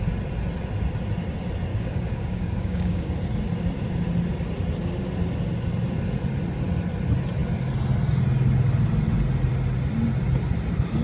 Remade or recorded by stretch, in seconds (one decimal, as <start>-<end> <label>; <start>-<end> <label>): 0.0-1.7 recorded; 1.7-3.1 remade; 3.1-11.0 recorded